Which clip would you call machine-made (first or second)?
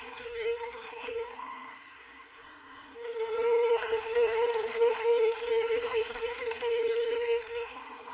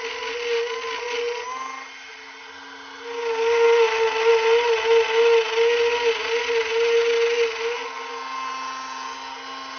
first